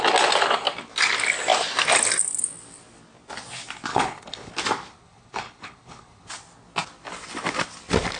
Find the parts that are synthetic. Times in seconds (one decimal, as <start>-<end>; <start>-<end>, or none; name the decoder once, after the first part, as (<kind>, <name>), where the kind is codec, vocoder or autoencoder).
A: 3.9-4.5 (codec, HILCodec); 4.9-6.3